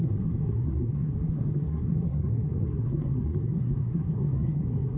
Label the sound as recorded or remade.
remade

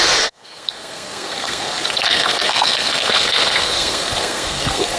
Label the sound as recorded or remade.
remade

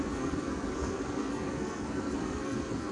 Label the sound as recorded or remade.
remade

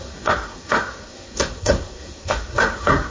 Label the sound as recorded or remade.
remade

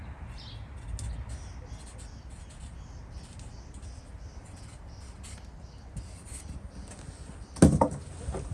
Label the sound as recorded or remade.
recorded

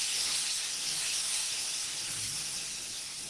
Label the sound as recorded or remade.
remade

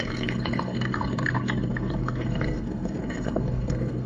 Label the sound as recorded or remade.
remade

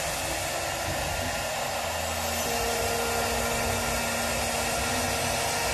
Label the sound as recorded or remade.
recorded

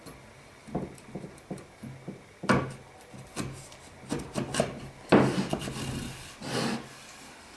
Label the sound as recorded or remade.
recorded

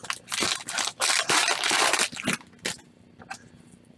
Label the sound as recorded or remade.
recorded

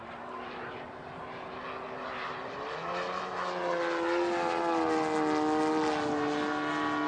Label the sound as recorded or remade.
recorded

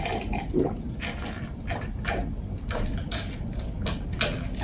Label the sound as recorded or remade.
recorded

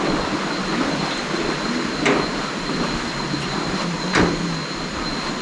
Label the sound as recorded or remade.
recorded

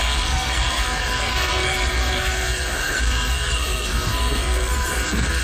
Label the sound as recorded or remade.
remade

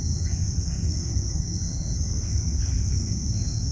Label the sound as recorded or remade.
remade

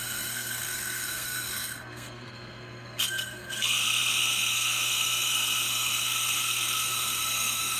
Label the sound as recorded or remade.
remade